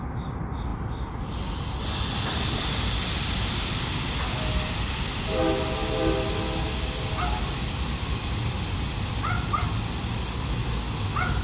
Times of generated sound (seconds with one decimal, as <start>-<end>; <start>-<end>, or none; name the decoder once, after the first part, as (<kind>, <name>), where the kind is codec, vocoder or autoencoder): none